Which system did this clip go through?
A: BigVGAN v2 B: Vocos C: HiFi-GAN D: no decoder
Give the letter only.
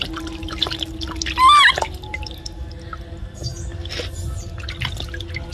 D